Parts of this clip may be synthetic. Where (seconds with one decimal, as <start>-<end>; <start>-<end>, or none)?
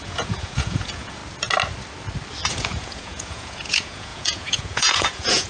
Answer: 0.0-1.2; 2.5-5.5